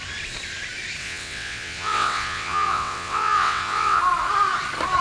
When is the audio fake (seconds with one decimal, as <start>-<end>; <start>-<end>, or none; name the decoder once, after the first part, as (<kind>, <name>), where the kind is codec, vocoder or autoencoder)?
1.0-4.0 (vocoder, WaveNeXt)